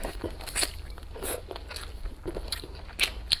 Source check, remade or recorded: recorded